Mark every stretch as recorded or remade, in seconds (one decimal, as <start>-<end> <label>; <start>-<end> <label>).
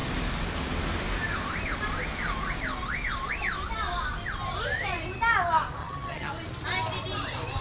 0.0-5.8 recorded; 5.8-6.3 remade; 6.3-7.6 recorded